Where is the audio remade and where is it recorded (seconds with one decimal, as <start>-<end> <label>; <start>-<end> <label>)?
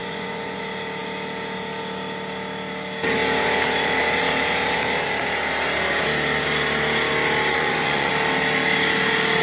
0.0-0.6 remade; 0.6-7.5 recorded; 7.5-8.1 remade; 8.1-9.4 recorded